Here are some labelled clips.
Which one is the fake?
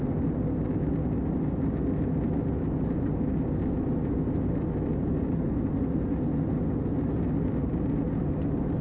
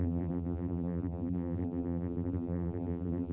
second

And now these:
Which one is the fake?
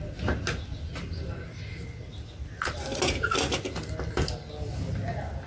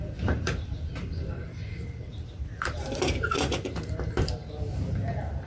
second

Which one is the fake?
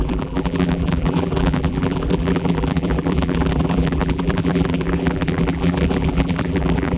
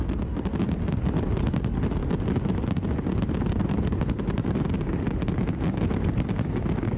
first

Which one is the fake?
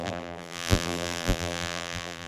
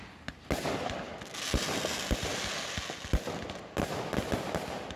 first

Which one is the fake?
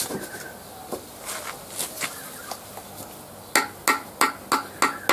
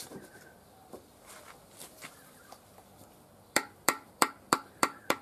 second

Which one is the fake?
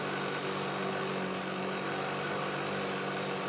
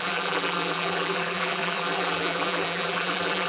second